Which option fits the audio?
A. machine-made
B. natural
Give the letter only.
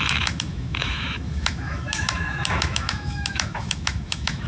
A